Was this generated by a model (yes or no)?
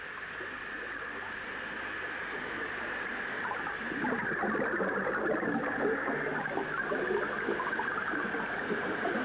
no